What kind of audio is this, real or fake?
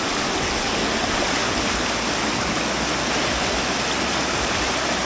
real